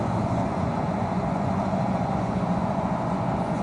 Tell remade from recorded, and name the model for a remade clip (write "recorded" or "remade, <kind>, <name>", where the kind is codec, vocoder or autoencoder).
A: remade, vocoder, Vocos